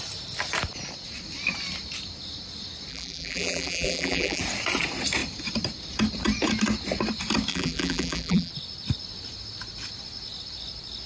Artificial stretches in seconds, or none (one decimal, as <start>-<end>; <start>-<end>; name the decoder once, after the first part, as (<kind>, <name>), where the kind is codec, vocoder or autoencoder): 2.9-4.4 (vocoder, BigVGAN v2); 7.5-8.5